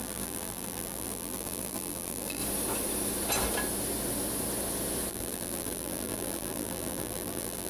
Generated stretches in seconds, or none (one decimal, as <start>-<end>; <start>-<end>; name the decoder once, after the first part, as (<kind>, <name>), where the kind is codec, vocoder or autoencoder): 0.0-2.4 (vocoder, BigVGAN v2); 5.1-7.7